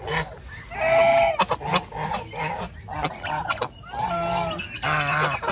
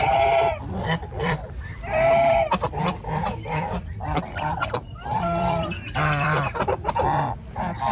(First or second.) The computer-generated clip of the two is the second